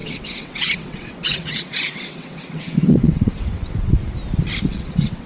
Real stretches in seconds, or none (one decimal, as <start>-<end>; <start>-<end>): 4.0-4.6